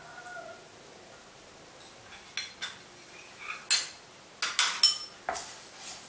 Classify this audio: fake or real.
real